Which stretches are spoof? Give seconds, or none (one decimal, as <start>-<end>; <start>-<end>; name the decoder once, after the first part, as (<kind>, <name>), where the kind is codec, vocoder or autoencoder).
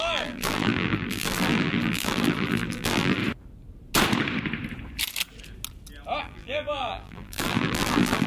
0.0-3.2 (vocoder, BigVGAN v2); 6.2-8.3